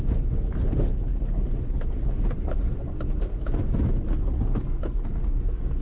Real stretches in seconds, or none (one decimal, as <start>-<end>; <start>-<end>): 0.0-5.8